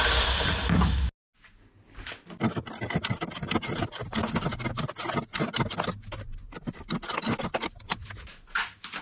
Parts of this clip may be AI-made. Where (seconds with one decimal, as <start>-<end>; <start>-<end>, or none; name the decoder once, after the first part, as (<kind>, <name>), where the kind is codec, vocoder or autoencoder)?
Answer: none